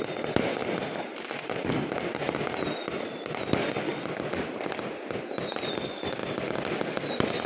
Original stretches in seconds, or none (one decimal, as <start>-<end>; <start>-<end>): 0.0-7.5